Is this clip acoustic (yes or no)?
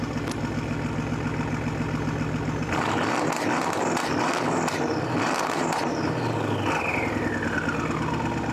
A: yes